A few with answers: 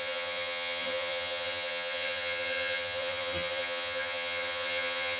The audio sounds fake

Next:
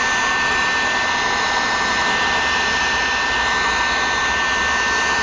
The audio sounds real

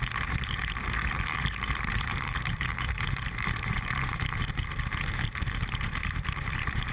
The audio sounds fake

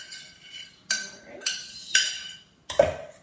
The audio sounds real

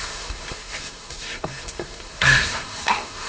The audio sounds fake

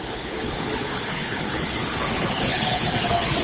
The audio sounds fake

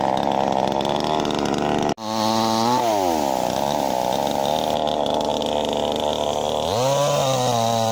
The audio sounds real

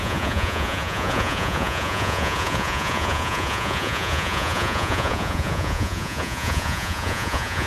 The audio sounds fake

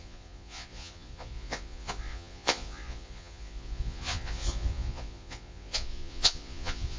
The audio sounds fake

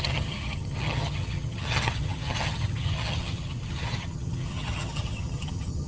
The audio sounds fake